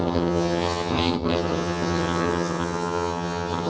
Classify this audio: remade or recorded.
remade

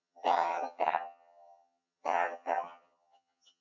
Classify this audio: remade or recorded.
remade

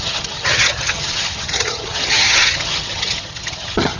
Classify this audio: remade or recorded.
remade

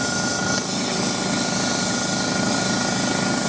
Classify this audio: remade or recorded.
recorded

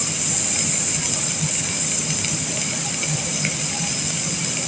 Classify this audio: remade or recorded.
recorded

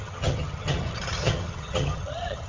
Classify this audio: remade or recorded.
remade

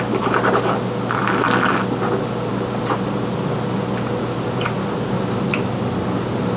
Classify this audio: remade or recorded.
recorded